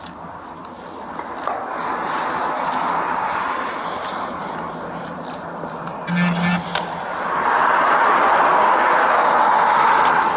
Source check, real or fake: real